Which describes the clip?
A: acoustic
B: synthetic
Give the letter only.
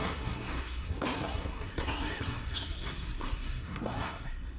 B